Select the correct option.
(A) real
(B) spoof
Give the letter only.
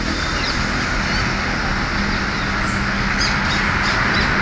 A